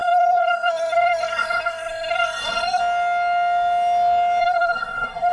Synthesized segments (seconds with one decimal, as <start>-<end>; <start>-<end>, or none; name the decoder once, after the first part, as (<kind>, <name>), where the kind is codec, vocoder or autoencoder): 0.0-2.8 (codec, SNAC); 4.4-5.3